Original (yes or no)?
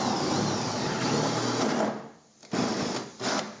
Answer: yes